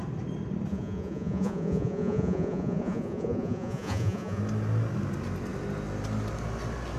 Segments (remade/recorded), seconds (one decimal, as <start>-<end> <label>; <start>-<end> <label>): 0.0-0.7 recorded; 0.7-4.4 remade; 4.4-7.0 recorded